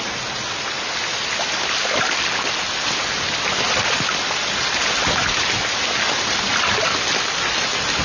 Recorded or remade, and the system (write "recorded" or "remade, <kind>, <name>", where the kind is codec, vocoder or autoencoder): recorded